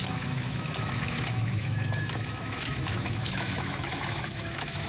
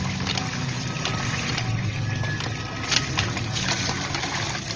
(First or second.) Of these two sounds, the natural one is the second